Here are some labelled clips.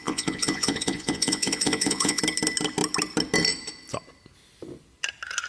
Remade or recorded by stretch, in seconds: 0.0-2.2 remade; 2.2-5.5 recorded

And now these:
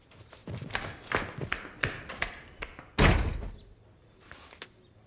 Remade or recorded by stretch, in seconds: 0.0-5.1 recorded

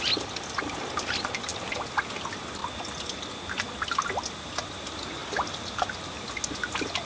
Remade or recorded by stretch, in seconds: 0.0-7.1 recorded